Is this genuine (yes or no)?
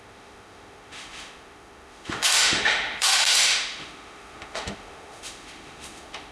no